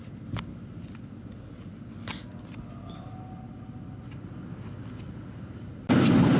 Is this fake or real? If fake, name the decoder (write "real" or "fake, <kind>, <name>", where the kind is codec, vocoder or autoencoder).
real